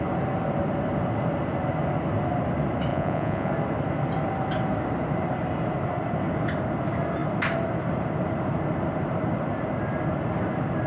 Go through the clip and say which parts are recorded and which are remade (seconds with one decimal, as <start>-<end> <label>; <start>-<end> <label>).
0.0-2.9 recorded; 2.9-3.5 remade; 3.5-10.9 recorded